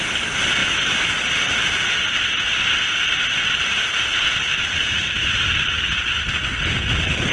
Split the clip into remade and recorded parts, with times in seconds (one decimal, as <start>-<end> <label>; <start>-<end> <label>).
0.0-7.3 recorded